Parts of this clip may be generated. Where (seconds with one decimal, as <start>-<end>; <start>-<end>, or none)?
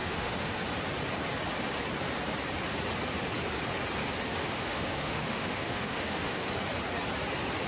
0.0-0.6; 4.4-6.5